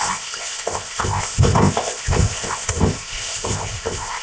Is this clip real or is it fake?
fake